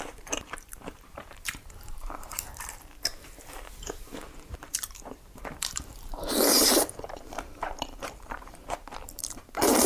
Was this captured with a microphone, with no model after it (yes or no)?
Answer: no